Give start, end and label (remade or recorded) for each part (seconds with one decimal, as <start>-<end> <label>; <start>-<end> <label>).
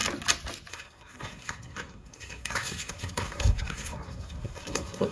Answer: 0.0-0.7 recorded; 0.7-5.1 remade